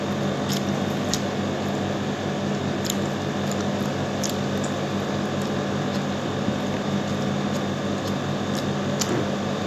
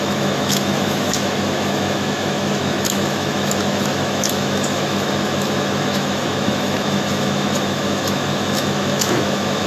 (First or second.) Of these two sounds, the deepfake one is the second